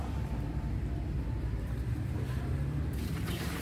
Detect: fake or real fake